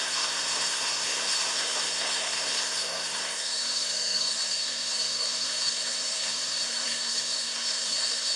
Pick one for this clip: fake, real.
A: fake